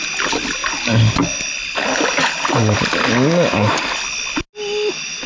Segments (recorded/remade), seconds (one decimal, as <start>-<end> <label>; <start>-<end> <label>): 0.0-5.3 recorded

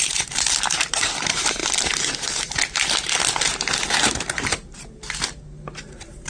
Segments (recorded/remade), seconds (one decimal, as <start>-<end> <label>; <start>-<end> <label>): 0.0-1.6 remade; 1.6-5.4 recorded; 5.4-6.3 remade

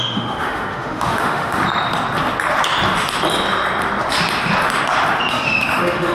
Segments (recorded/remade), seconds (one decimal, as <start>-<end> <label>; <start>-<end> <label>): 0.0-1.6 remade; 1.6-5.3 recorded; 5.3-6.1 remade

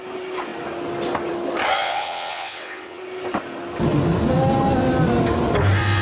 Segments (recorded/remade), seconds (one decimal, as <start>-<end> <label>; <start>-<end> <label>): 0.0-1.8 recorded; 1.8-3.0 remade; 3.0-6.0 recorded

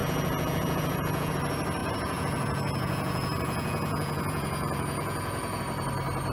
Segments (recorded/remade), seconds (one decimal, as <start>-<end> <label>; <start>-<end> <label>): 0.0-1.3 remade; 1.3-1.8 recorded; 1.8-5.6 remade; 5.6-6.3 recorded

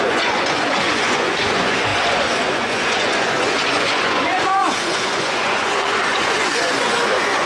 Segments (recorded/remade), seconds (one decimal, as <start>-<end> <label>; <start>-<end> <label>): 0.0-7.5 remade

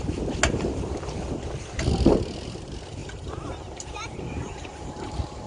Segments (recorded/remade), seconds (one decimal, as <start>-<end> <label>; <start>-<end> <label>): 0.0-3.0 recorded; 3.0-5.1 remade; 5.1-5.5 recorded

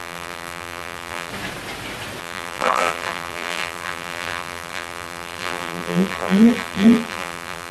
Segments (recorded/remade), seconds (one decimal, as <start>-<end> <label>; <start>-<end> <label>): 0.0-1.3 remade; 1.3-2.2 recorded; 2.2-7.7 remade